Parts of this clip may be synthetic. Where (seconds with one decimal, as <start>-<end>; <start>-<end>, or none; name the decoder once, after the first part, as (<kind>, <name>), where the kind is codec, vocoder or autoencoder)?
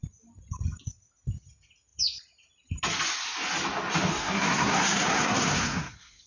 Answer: 4.1-6.3 (codec, SNAC)